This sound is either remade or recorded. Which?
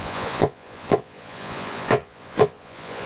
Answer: remade